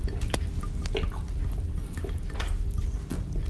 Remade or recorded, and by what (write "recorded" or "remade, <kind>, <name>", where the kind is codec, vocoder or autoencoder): recorded